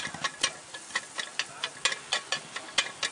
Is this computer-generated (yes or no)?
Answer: no